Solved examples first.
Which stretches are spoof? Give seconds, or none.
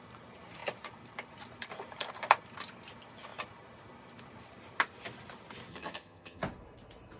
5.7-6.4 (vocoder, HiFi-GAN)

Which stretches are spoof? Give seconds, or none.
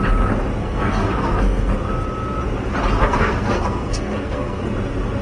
0.6-1.7 (codec, SNAC); 3.0-4.6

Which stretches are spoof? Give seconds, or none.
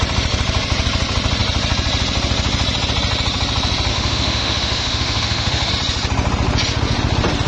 3.9-5.7 (autoencoder, DAC-VAE)